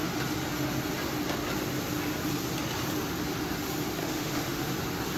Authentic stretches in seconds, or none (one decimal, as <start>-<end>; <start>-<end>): 0.0-4.0; 4.7-5.2